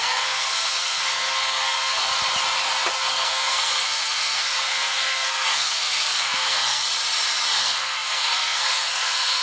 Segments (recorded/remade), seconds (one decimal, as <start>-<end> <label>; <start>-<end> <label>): 0.0-2.1 remade; 2.1-2.9 recorded; 2.9-6.8 remade; 6.8-7.6 recorded; 7.6-9.4 remade